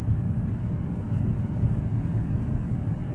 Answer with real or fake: fake